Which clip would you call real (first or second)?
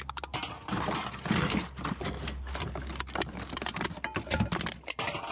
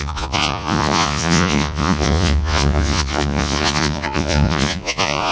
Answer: first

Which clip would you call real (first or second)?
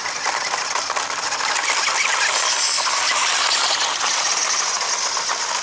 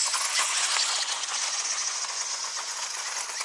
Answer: first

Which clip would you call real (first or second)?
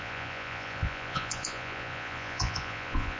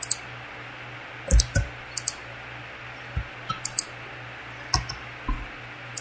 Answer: second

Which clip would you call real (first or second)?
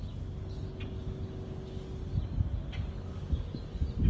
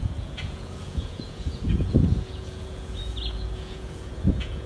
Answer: first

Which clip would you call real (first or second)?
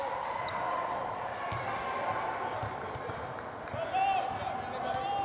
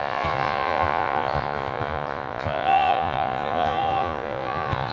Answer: first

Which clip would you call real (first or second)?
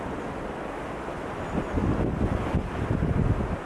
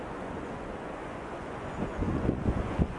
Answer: first